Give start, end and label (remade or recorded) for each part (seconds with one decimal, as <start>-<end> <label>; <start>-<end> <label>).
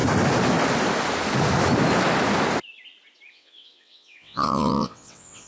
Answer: 0.0-3.3 recorded; 3.3-5.5 remade